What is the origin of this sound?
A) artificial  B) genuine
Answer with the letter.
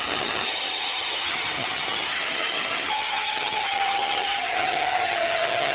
A